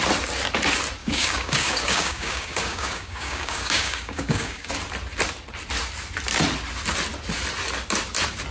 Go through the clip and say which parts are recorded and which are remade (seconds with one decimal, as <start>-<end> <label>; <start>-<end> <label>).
0.0-1.0 recorded; 1.0-4.7 remade; 4.7-8.5 recorded